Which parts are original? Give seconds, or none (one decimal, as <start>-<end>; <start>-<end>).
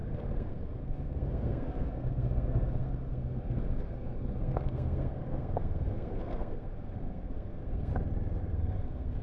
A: 7.9-8.4